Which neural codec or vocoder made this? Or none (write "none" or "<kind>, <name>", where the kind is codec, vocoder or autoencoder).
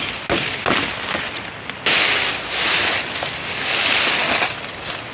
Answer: none